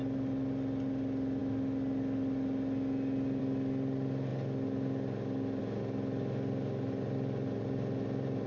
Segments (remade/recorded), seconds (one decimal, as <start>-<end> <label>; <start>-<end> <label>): 0.0-8.5 recorded